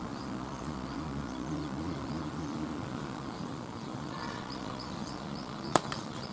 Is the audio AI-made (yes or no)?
yes